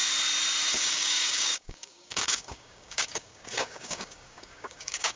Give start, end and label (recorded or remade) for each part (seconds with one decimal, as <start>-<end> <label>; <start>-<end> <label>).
0.0-0.7 recorded; 0.7-5.2 remade